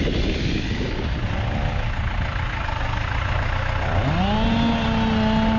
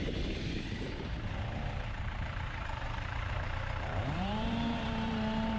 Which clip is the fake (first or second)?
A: second